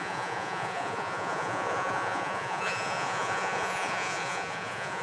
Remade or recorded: remade